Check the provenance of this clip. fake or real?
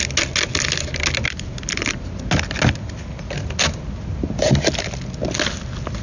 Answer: real